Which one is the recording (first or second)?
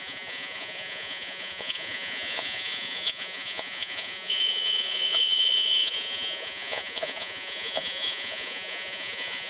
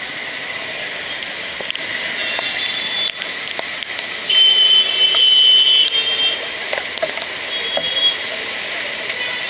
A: second